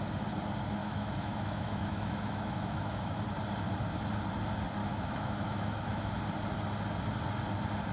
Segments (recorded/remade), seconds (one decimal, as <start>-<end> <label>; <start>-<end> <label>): 0.0-0.8 recorded; 0.8-3.2 remade; 3.2-4.8 recorded; 4.8-6.2 remade; 6.2-7.9 recorded